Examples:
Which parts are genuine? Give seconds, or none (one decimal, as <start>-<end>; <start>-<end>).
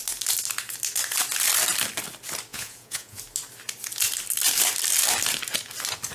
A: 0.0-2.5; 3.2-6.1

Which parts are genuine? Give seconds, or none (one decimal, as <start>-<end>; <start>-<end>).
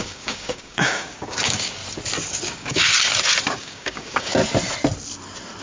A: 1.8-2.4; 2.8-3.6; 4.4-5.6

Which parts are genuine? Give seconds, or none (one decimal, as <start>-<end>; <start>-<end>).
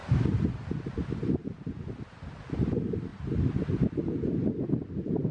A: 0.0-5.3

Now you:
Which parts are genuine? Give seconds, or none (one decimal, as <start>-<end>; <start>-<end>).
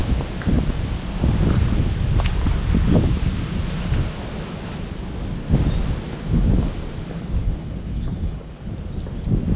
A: 0.0-7.4; 8.7-9.6